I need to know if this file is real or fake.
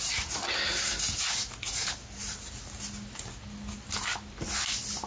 real